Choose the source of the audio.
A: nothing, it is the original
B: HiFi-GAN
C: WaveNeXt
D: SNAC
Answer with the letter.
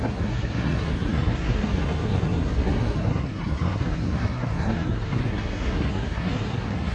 D